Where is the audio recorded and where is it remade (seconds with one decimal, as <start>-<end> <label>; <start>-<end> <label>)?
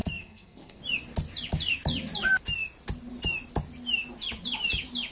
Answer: 0.0-0.8 remade; 0.8-5.1 recorded